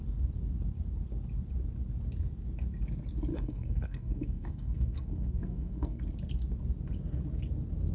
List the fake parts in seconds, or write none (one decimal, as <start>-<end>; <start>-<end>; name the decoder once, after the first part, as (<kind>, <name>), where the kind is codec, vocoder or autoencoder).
3.3-6.0 (codec, SNAC)